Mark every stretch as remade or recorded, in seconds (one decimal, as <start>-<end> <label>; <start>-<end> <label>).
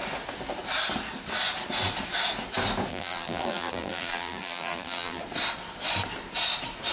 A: 0.0-2.9 recorded; 2.9-5.2 remade; 5.2-6.9 recorded